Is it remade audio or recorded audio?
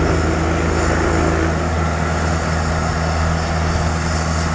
recorded